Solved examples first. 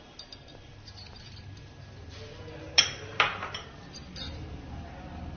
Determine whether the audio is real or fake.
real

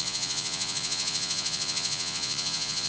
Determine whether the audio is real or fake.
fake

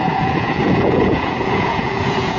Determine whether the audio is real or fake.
fake